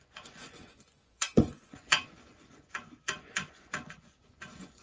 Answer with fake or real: fake